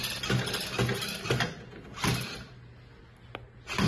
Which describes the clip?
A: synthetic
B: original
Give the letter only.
B